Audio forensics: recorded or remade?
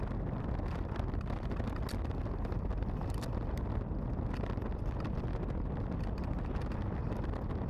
recorded